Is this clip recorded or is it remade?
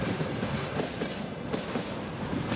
recorded